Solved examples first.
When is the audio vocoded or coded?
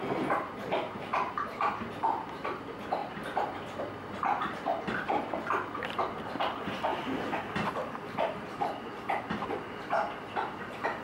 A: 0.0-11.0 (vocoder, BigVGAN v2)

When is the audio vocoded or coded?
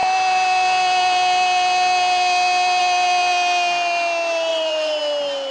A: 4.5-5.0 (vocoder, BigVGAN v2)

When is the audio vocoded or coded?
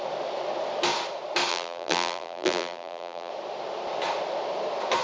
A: 1.5-3.3 (vocoder, BigVGAN v2)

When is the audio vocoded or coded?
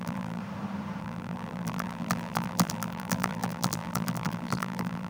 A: 0.0-0.4 (vocoder, BigVGAN v2); 1.0-5.1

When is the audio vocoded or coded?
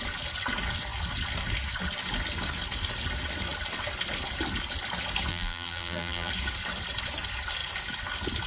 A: 5.3-6.3 (vocoder, BigVGAN v2)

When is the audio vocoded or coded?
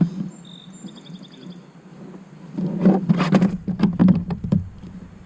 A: 1.9-3.1 (vocoder, BigVGAN v2); 4.0-4.6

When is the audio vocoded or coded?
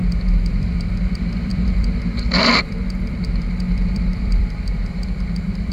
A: 0.6-5.7 (vocoder, BigVGAN v2)